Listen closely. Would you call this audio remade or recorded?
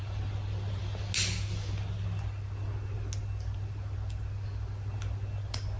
recorded